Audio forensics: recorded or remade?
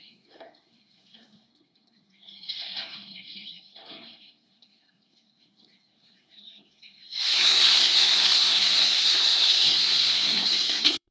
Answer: remade